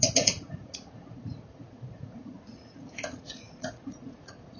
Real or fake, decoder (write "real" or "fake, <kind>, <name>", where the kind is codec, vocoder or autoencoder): fake, vocoder, Vocos